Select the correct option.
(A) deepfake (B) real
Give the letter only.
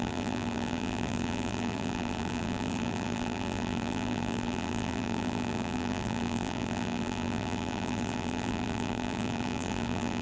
A